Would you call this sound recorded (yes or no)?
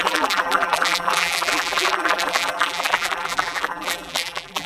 no